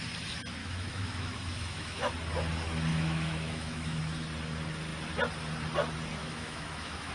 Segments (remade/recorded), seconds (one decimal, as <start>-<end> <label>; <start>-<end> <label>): 0.0-0.6 recorded; 0.6-2.1 remade; 2.1-2.9 recorded; 2.9-4.0 remade; 4.0-6.2 recorded; 6.2-7.1 remade